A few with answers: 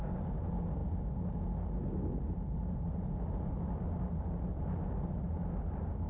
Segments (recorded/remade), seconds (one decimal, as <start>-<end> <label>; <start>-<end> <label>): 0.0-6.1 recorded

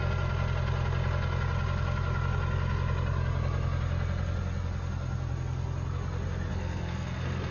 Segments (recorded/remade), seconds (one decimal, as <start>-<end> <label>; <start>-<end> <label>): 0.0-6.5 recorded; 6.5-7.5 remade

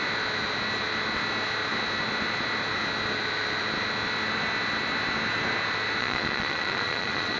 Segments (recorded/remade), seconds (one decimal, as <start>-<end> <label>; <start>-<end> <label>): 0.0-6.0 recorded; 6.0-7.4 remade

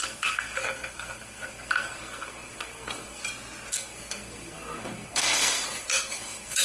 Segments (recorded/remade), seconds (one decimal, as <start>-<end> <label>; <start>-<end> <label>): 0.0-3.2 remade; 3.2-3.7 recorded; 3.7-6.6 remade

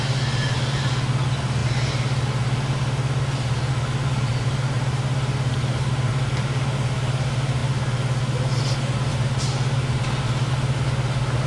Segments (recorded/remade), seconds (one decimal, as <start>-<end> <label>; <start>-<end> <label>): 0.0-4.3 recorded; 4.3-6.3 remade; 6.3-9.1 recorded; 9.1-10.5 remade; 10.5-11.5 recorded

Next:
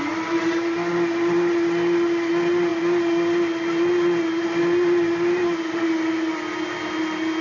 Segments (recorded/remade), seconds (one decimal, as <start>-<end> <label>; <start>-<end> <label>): 0.0-7.4 recorded

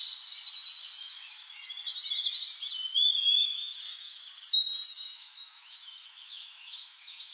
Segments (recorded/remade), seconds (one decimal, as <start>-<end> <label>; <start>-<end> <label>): 0.0-1.0 recorded; 1.0-1.6 remade; 1.6-3.4 recorded; 3.4-4.2 remade; 4.2-4.9 recorded; 4.9-7.3 remade

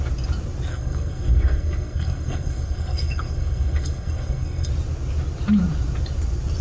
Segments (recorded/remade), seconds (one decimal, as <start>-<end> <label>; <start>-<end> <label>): 0.0-0.7 recorded; 0.7-4.7 remade; 4.7-6.6 recorded